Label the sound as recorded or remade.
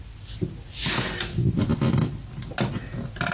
recorded